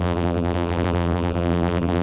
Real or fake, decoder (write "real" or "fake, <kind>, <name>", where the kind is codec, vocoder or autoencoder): fake, vocoder, BigVGAN v2